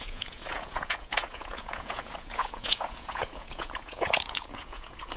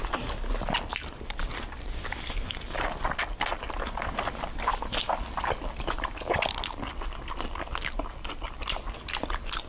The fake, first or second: first